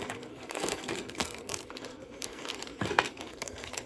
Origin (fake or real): fake